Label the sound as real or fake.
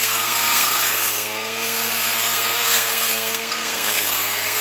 fake